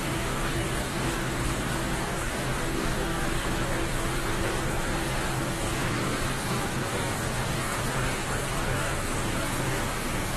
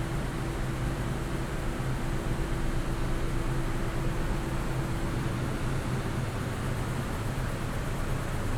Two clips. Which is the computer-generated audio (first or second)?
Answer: first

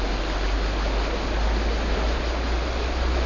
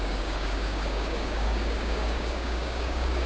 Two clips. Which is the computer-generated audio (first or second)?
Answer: second